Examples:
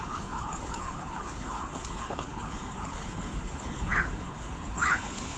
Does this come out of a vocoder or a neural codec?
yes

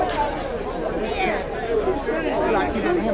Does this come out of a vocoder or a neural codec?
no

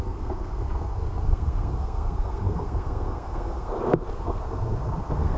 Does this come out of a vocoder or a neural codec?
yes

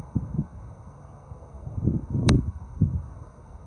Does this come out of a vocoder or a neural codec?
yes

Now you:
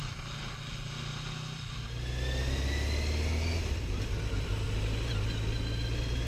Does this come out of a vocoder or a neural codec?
no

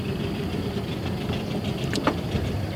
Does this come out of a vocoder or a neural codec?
yes